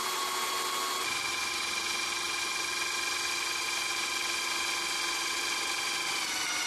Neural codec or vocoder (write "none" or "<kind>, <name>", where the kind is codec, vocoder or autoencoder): none